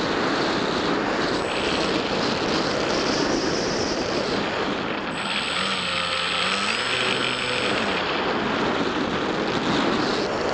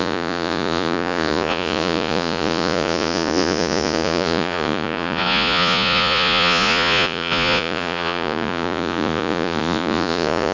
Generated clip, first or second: second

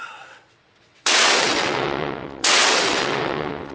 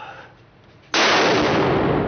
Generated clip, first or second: first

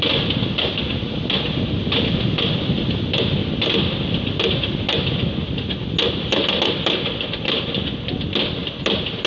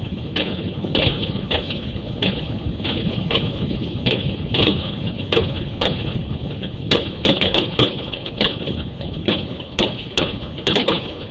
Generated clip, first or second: second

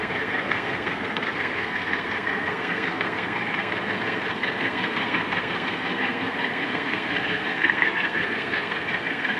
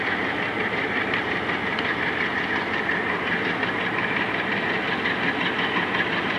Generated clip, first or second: first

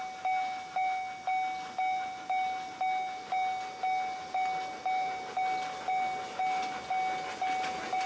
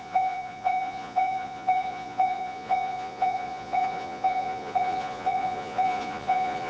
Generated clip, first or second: second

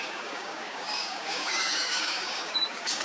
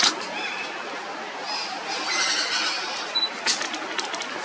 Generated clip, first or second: first